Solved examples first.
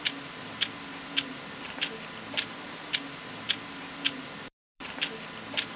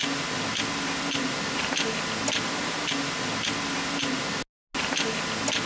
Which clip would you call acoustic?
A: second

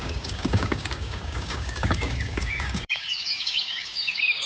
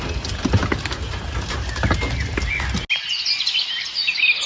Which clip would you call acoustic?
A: second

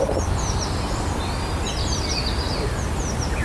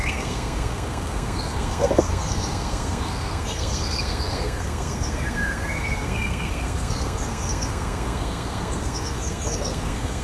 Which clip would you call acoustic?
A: first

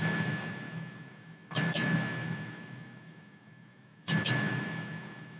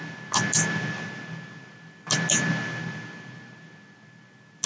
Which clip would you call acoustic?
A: second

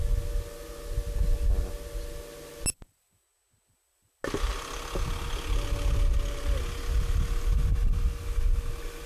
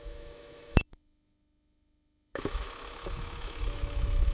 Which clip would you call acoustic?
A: first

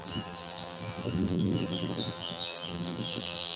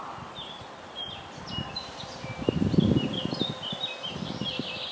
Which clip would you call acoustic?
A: second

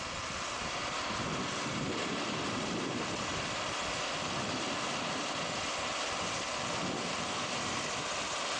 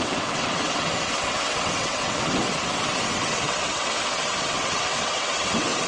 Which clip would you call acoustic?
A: first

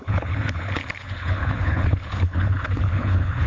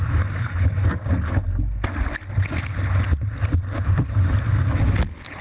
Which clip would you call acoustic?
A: second